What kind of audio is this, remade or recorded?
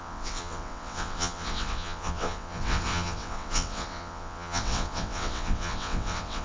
remade